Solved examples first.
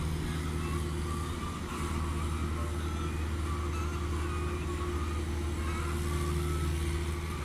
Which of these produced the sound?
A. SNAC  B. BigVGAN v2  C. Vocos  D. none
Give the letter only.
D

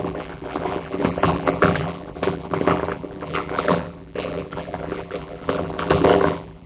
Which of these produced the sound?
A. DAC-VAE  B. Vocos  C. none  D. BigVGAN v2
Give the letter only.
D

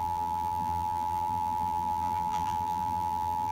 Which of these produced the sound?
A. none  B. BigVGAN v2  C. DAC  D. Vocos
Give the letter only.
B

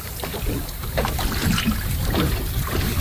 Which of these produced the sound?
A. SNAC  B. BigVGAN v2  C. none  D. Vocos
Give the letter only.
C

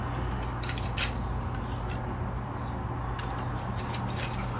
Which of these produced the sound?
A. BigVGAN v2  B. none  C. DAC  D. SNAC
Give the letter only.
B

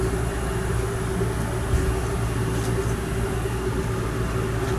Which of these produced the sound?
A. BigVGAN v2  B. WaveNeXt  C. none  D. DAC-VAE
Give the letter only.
C